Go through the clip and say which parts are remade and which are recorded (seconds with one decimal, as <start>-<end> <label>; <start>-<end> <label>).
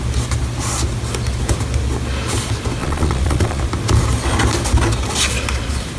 0.0-2.8 recorded; 2.8-3.6 remade; 3.6-6.0 recorded